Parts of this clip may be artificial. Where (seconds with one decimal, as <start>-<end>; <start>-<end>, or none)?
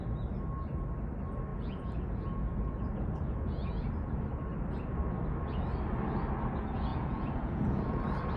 1.5-4.2; 6.9-8.0